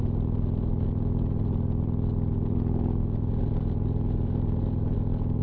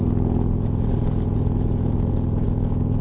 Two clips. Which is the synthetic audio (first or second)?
second